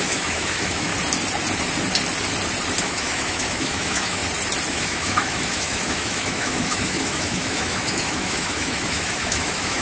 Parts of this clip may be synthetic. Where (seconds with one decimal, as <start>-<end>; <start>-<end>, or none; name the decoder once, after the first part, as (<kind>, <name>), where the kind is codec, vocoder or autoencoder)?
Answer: 0.0-0.9 (autoencoder, DAC-VAE); 2.8-4.2; 4.7-9.8